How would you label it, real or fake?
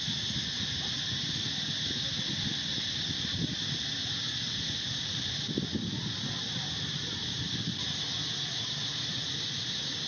real